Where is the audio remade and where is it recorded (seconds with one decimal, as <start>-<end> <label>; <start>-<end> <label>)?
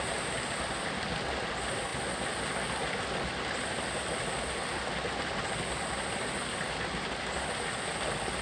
0.0-8.4 recorded